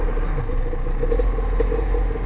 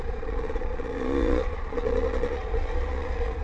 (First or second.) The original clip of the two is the first